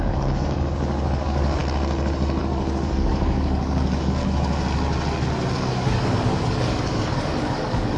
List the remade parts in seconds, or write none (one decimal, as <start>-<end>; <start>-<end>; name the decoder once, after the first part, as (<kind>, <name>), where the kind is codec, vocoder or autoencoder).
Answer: 0.0-1.6 (codec, DAC); 2.4-4.2; 5.5-8.0